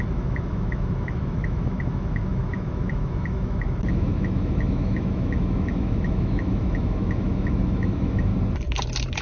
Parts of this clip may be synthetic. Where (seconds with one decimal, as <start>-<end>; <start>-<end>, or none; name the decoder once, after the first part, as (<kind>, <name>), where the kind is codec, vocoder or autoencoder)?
0.0-8.3 (autoencoder, DAC-VAE)